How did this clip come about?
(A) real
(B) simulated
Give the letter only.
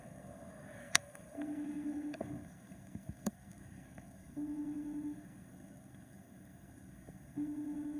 B